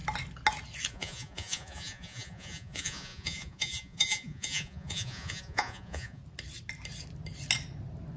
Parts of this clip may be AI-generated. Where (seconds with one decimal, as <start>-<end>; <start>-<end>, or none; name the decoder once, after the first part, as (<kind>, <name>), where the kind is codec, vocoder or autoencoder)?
0.9-6.2 (vocoder, Vocos)